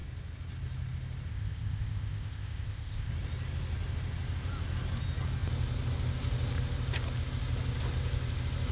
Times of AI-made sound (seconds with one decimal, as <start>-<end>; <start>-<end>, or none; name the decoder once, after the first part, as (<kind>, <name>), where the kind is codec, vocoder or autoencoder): 1.3-3.1 (codec, ZipCodec)